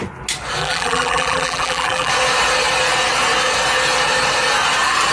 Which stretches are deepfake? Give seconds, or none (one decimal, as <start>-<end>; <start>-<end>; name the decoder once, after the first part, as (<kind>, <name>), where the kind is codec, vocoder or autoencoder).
0.6-2.1 (vocoder, BigVGAN v2)